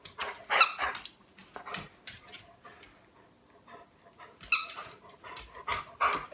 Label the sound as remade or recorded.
recorded